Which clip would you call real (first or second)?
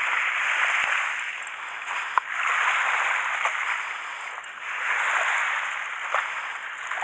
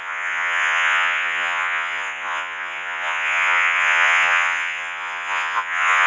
first